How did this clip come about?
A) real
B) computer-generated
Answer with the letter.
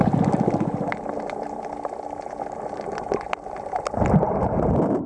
A